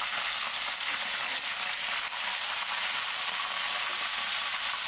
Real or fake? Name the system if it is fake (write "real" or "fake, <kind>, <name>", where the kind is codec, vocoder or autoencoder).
real